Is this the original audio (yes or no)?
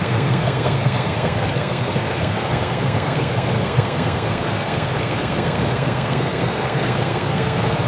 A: no